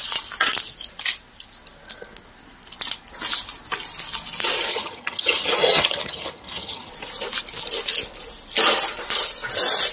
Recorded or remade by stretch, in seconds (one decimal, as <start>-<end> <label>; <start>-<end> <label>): 0.0-4.7 recorded; 4.7-6.9 remade; 6.9-9.9 recorded